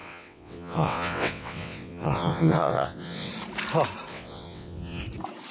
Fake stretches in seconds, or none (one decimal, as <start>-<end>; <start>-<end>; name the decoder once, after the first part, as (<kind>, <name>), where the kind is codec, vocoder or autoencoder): 0.0-3.3 (vocoder, WaveNeXt); 4.1-5.0